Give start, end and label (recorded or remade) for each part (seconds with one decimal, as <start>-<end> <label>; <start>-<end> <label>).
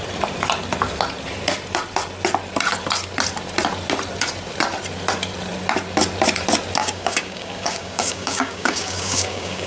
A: 0.0-6.8 recorded; 6.8-9.7 remade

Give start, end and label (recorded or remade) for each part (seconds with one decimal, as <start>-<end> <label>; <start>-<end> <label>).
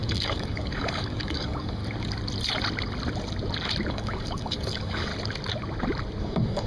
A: 0.0-1.8 remade; 1.8-3.9 recorded; 3.9-5.1 remade; 5.1-6.2 recorded; 6.2-6.7 remade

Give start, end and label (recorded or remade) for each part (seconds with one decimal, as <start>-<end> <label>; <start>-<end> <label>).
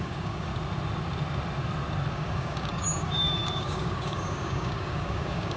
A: 0.0-0.5 remade; 0.5-2.1 recorded; 2.1-5.6 remade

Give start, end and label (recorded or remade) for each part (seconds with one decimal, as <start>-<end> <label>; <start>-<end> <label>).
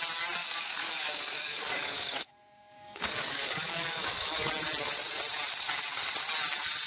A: 0.0-0.4 recorded; 0.4-4.5 remade; 4.5-6.9 recorded